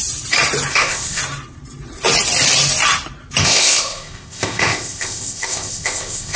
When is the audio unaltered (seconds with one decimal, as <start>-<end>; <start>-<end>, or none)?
0.0-0.7; 1.2-3.4